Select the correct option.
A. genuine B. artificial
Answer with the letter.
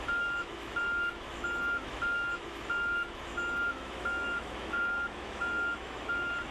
B